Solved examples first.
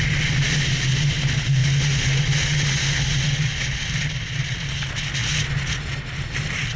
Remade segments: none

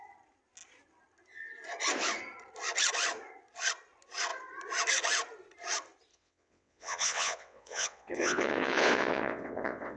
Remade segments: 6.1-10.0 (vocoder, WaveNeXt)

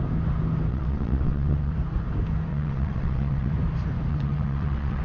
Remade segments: 0.7-1.7 (vocoder, WaveNeXt); 2.5-3.5; 4.1-5.0